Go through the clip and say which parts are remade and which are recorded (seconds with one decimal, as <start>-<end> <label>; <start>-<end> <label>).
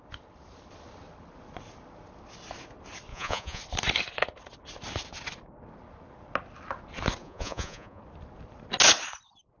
0.0-3.1 recorded; 3.1-3.6 remade; 3.6-7.2 recorded; 7.2-8.0 remade; 8.0-9.6 recorded